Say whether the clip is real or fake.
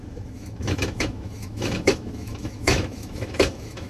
fake